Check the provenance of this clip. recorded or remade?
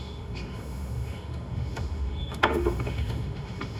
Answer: remade